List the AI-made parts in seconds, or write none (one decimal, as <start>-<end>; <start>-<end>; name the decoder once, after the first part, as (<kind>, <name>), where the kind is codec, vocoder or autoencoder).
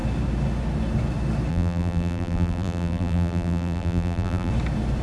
1.5-4.5 (vocoder, BigVGAN v2)